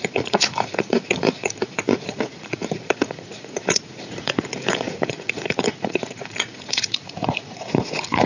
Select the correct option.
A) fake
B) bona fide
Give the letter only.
A